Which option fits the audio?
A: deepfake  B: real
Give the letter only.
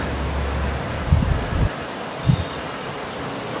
B